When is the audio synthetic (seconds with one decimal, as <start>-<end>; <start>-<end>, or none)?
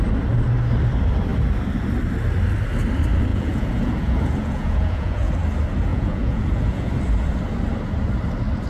3.3-5.3; 5.9-6.9